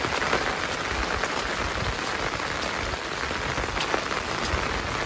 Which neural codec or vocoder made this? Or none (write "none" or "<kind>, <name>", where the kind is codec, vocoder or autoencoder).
none